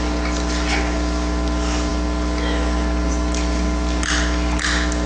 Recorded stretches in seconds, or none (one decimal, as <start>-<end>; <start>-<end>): 0.0-5.1